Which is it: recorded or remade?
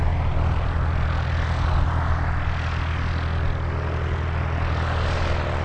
recorded